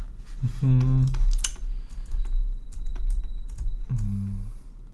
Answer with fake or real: real